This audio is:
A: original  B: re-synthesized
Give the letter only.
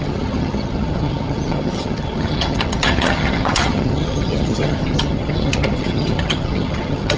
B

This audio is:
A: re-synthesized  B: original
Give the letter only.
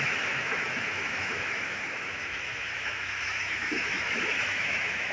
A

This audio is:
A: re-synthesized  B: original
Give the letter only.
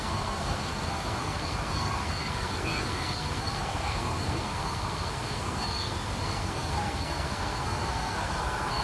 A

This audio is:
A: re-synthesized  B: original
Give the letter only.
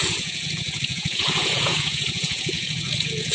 A